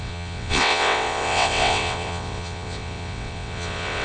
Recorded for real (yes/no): no